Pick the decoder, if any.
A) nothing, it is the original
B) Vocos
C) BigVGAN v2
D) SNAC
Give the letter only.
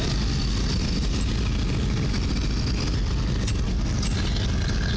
A